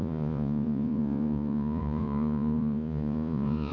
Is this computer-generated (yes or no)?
yes